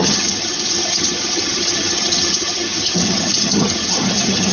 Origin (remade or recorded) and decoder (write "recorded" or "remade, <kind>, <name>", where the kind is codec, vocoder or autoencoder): remade, vocoder, HiFi-GAN